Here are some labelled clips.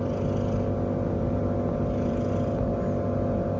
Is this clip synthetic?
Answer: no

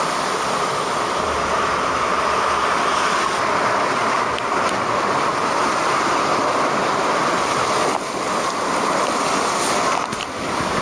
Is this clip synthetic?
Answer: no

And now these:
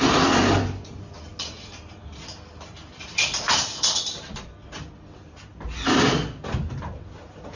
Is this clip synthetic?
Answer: no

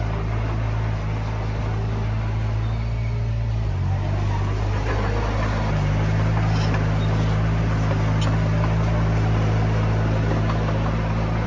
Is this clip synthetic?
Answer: no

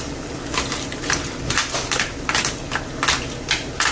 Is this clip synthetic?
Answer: no